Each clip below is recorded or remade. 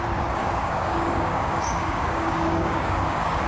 remade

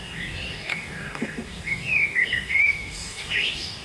remade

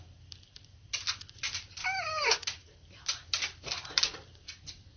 recorded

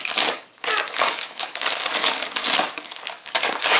remade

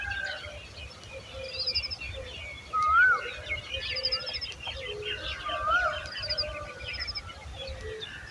recorded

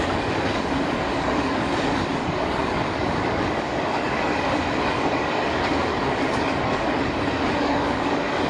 remade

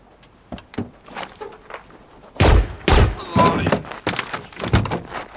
recorded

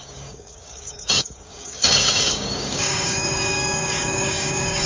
remade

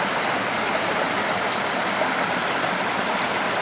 recorded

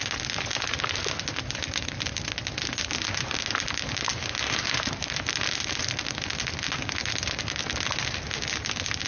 recorded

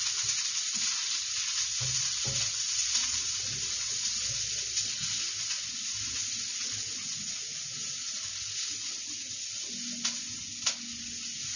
recorded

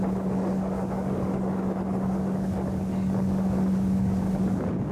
remade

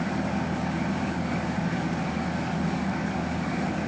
remade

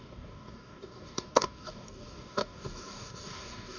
remade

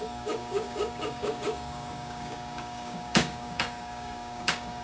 remade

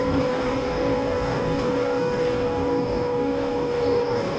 remade